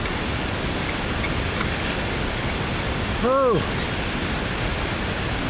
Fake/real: real